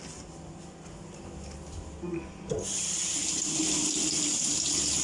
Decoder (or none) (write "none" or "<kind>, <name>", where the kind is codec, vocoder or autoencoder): none